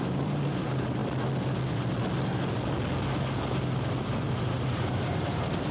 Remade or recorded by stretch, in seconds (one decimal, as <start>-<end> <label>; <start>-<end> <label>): 0.0-1.0 remade; 1.0-4.4 recorded; 4.4-5.7 remade